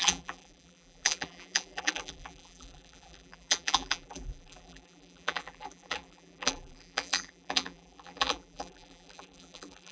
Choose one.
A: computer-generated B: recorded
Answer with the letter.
A